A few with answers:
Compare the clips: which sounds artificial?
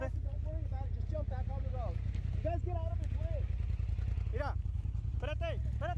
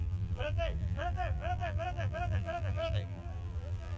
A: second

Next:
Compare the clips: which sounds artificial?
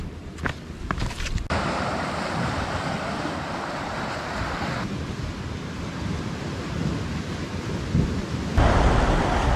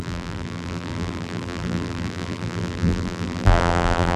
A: second